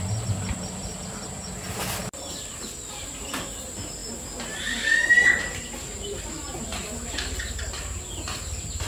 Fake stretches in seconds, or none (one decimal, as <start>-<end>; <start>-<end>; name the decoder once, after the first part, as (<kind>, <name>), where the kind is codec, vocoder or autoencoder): none